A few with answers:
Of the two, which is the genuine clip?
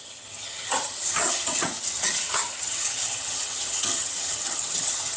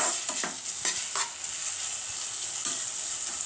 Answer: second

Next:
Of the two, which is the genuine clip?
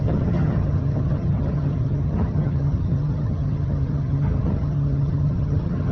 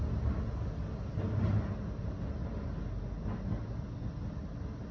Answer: second